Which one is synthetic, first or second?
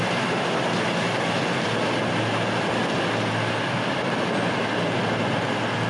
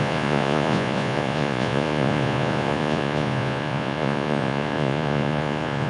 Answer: second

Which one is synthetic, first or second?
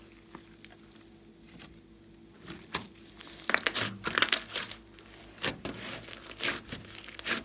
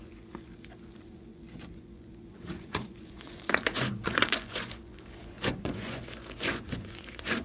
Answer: second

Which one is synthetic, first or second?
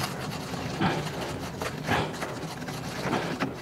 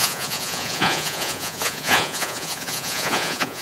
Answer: second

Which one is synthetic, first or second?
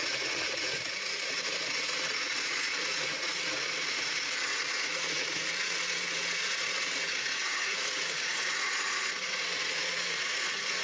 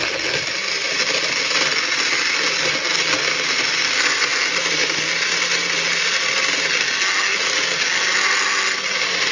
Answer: first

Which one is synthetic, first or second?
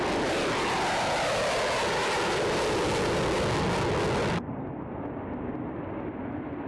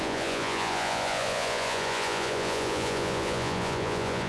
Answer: second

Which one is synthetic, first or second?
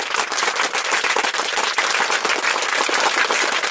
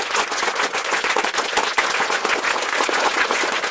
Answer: second